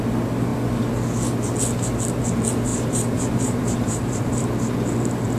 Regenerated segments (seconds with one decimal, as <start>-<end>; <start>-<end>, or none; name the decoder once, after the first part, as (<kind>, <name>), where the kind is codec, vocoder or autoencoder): 2.7-4.5 (vocoder, BigVGAN v2)

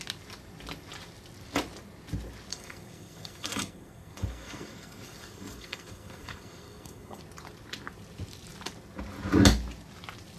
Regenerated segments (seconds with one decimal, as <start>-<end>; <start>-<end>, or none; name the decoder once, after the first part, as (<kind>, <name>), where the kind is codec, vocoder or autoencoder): 2.5-7.2 (codec, SNAC)

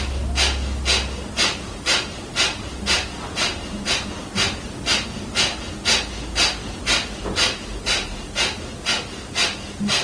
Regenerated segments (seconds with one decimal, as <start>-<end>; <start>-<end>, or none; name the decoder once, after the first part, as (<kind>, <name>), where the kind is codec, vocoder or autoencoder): none

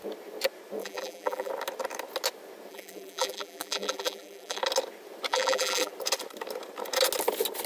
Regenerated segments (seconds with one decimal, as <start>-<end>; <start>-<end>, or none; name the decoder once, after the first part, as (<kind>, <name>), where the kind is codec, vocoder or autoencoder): 0.8-1.5 (vocoder, BigVGAN v2); 2.7-4.6; 5.3-5.9

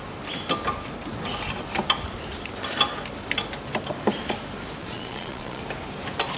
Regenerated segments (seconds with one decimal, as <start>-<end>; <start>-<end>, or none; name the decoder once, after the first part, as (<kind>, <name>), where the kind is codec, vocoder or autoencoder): 4.8-5.6 (vocoder, Vocos)